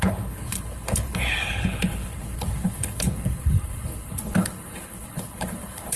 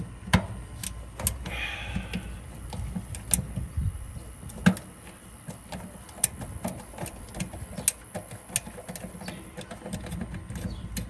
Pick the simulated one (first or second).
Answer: first